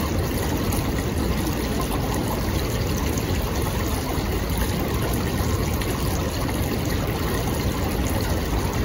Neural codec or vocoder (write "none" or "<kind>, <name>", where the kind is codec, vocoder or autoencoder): none